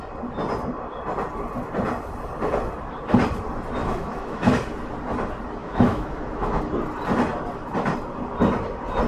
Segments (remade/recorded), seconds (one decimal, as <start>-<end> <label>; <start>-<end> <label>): 0.0-3.8 recorded; 3.8-4.5 remade; 4.5-5.6 recorded; 5.6-6.6 remade; 6.6-9.1 recorded